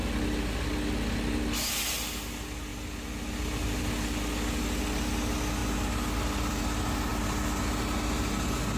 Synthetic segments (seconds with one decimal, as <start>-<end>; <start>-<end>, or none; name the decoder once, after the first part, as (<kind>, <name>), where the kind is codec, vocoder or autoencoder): none